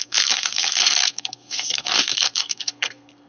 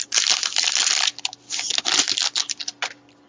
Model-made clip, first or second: first